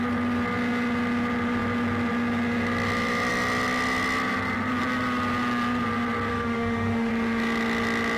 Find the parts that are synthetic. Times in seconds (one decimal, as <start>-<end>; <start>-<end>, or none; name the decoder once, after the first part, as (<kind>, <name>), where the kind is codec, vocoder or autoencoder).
6.3-7.1 (autoencoder, DAC-VAE)